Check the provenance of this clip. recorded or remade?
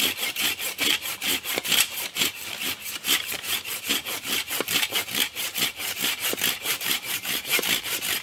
remade